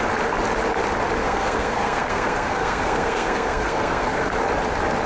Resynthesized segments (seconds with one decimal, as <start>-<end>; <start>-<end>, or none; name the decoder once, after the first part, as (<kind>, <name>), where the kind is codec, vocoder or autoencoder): 1.2-4.3 (codec, SNAC)